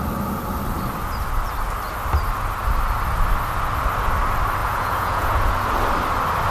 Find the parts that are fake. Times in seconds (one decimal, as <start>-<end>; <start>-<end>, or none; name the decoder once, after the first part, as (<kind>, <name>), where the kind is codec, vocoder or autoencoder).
4.6-5.5 (vocoder, Vocos)